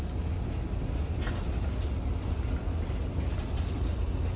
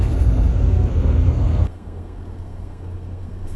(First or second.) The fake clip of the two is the second